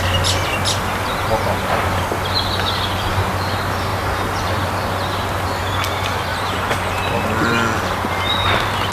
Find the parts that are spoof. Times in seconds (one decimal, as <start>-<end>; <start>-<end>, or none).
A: 3.9-4.5; 6.3-6.9